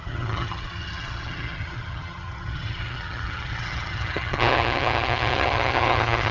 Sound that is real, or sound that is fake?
fake